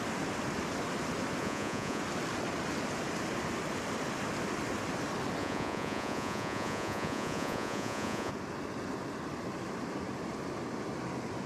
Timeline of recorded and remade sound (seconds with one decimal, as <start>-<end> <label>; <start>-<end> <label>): 0.0-1.4 recorded; 1.4-2.0 remade; 2.0-5.4 recorded; 5.4-8.3 remade; 8.3-11.5 recorded